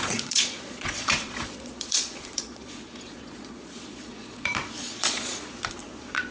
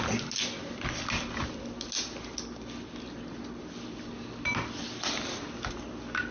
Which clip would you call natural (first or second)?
second